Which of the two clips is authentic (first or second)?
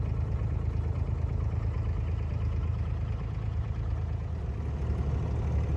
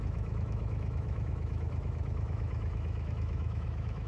first